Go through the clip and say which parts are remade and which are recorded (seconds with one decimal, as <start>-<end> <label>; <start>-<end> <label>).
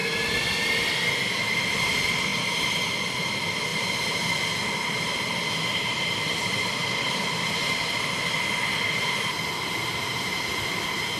0.0-11.2 recorded